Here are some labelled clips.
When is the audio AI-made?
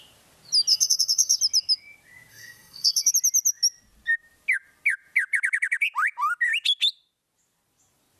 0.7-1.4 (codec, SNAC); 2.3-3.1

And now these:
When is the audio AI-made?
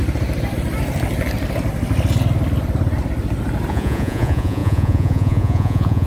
3.7-6.1 (vocoder, Vocos)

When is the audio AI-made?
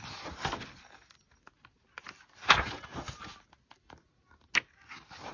none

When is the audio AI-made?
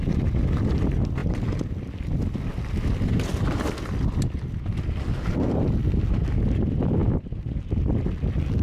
none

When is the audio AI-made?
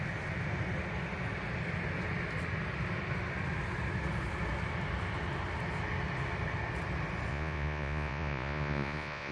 7.3-9.3 (vocoder, Vocos)